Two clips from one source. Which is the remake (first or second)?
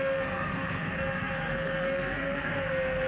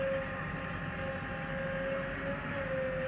first